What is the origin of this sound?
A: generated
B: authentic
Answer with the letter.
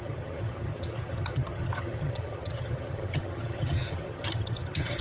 A